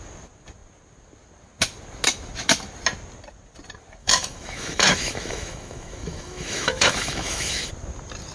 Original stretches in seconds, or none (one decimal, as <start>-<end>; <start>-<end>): 0.0-4.0; 7.7-8.3